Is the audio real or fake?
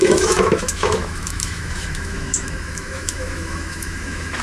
fake